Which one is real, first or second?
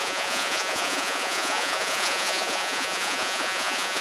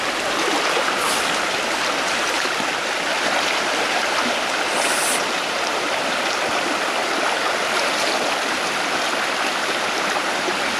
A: second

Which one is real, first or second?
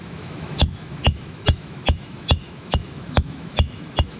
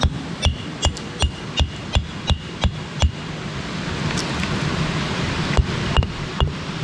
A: second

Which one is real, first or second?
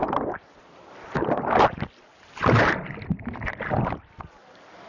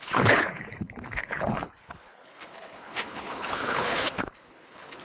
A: first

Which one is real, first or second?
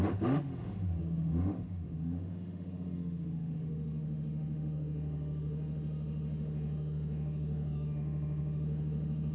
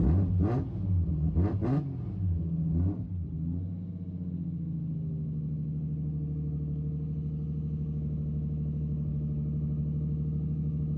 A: second